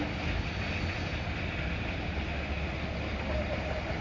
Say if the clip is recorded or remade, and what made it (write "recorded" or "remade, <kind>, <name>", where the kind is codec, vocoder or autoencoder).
recorded